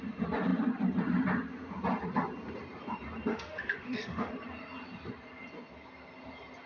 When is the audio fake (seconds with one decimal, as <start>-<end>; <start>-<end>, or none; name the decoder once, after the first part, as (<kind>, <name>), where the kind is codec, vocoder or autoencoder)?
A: 3.3-4.3 (autoencoder, DAC-VAE)